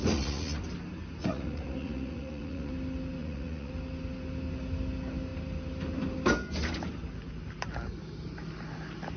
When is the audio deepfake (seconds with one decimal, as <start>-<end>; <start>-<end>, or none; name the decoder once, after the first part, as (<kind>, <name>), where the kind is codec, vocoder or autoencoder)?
0.0-0.6 (vocoder, Vocos); 1.2-2.7; 3.2-3.7